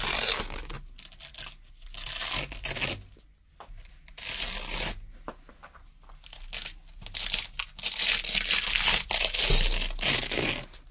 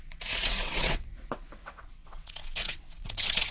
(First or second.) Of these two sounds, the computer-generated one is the second